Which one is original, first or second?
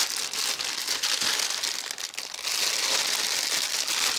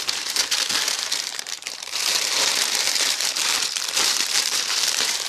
first